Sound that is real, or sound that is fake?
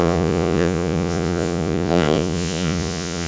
fake